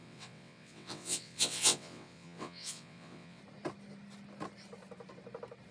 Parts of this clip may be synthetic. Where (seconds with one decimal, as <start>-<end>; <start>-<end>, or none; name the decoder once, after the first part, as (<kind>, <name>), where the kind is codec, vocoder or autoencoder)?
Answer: 0.0-3.4 (vocoder, WaveNeXt)